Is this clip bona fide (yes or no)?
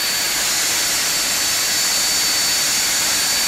yes